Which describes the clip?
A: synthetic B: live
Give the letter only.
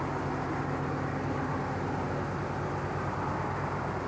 B